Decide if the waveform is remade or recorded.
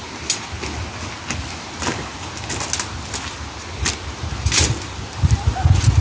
recorded